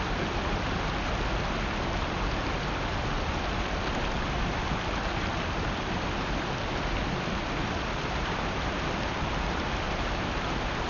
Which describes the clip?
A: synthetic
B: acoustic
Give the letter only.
B